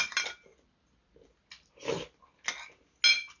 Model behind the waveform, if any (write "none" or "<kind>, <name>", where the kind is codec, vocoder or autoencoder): none